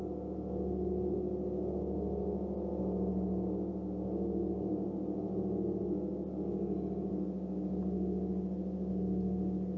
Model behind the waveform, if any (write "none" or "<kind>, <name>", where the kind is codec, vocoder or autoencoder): none